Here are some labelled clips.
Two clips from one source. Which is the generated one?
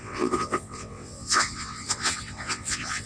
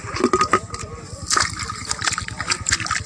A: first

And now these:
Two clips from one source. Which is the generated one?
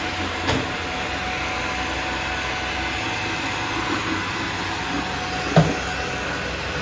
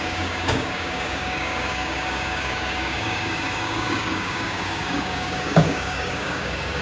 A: second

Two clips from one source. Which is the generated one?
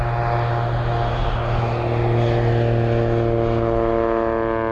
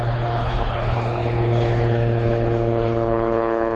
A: second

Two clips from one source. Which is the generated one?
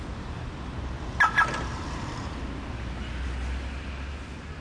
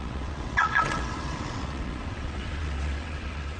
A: second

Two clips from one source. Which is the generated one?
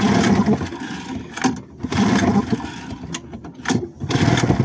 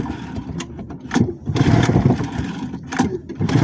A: second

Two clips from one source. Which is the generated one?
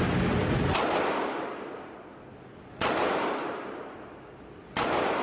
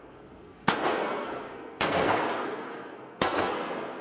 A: second